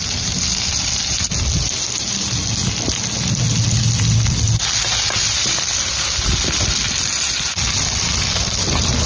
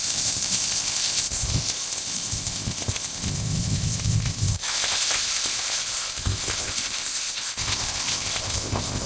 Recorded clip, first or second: first